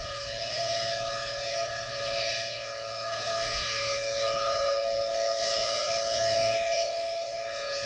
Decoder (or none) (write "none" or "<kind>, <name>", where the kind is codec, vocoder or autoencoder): codec, HILCodec